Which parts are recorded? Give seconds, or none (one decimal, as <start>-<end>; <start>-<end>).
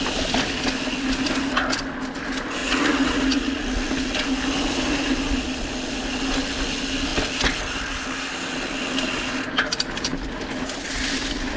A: 0.0-2.6; 3.6-11.6